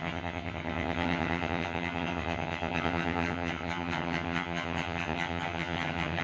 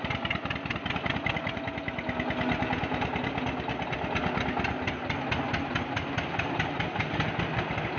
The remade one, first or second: first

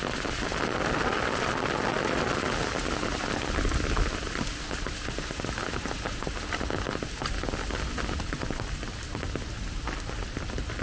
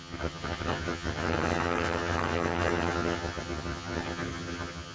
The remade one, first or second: second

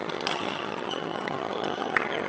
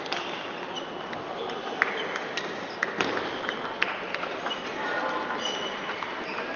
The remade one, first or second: first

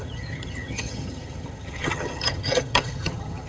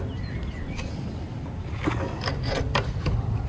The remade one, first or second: first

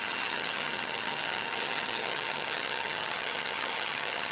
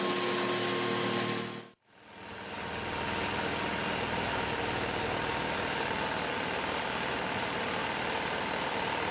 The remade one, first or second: first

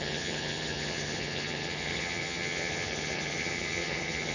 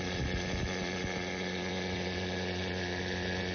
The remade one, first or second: first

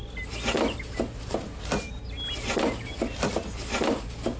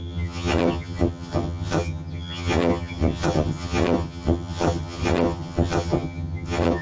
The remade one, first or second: second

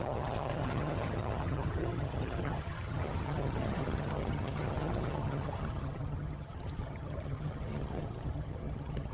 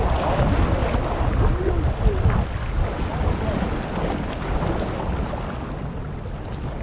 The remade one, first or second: first